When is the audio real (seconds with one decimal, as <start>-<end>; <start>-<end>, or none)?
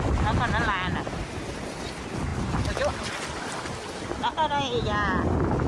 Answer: 0.0-5.7